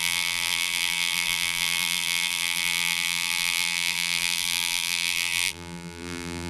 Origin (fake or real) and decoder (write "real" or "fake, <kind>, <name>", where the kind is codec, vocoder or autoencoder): fake, vocoder, BigVGAN v2